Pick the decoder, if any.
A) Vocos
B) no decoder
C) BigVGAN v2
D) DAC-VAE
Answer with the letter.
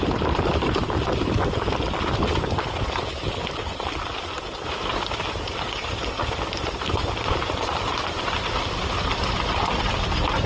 B